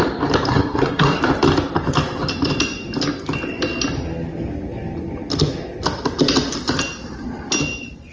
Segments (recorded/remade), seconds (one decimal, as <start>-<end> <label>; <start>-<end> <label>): 0.0-0.5 recorded; 0.5-1.2 remade; 1.2-8.1 recorded